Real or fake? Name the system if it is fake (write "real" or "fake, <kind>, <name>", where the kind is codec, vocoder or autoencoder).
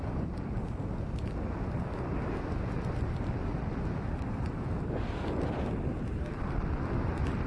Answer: real